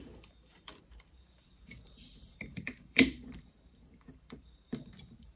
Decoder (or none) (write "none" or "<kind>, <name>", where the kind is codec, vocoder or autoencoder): vocoder, BigVGAN v2